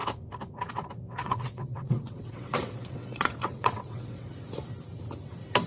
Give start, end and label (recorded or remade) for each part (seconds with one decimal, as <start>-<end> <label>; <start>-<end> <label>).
0.0-1.2 recorded; 1.2-4.3 remade; 4.3-5.7 recorded